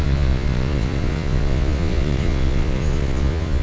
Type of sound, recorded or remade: remade